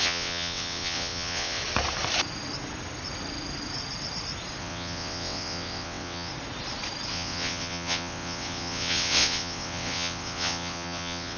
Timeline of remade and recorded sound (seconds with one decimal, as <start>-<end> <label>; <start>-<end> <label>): 0.0-1.6 remade; 1.6-4.6 recorded; 4.6-6.3 remade; 6.3-7.1 recorded; 7.1-11.4 remade